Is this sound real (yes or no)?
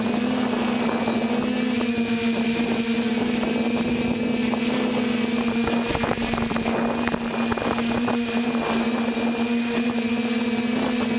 yes